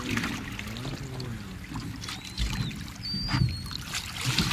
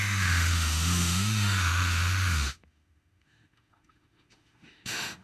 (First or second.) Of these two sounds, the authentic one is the first